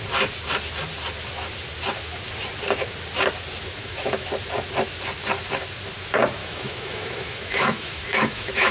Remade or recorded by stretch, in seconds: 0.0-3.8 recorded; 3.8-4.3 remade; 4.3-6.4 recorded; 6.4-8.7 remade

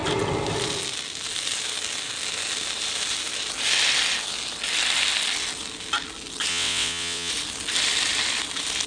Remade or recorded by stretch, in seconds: 0.0-6.5 recorded; 6.5-7.3 remade; 7.3-8.9 recorded

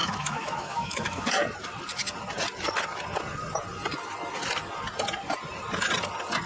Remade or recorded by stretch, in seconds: 0.0-1.3 remade; 1.3-6.5 recorded

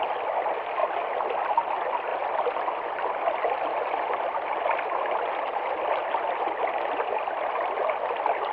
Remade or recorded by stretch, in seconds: 0.0-8.5 recorded